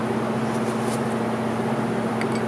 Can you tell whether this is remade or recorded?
recorded